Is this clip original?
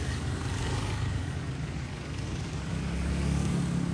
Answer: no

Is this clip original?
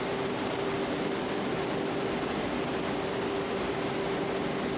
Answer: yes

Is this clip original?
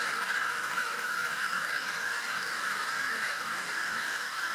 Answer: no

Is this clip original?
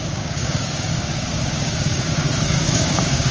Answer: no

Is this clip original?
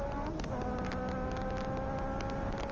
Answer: yes